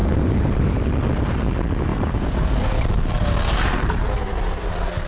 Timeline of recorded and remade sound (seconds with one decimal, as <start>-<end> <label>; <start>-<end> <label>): 0.0-0.8 remade; 0.8-1.9 recorded; 1.9-5.1 remade